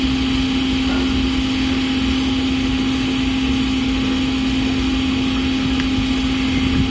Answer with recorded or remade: recorded